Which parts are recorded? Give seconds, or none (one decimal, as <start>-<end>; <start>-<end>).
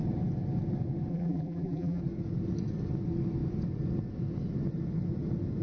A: 0.0-1.1; 2.0-5.6